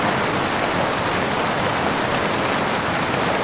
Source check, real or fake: real